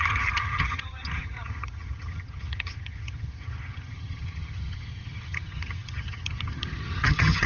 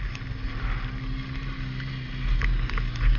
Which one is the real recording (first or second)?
second